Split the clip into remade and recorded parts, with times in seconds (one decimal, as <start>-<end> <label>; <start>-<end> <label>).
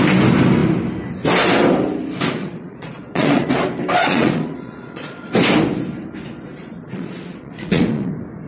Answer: 0.0-2.4 recorded; 2.4-3.5 remade; 3.5-4.0 recorded; 4.0-5.3 remade; 5.3-6.6 recorded; 6.6-8.1 remade; 8.1-8.5 recorded